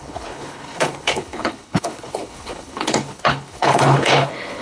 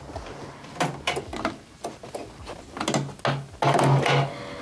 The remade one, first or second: first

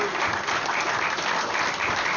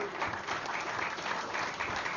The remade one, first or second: second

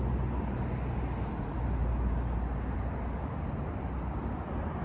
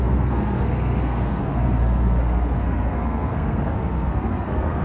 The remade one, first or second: second